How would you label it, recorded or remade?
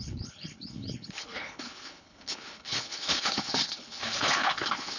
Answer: remade